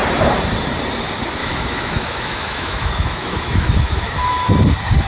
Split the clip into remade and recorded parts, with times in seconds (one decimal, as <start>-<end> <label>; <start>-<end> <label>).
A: 0.0-1.4 recorded; 1.4-4.5 remade; 4.5-5.1 recorded